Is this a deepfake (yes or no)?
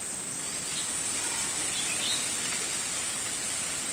no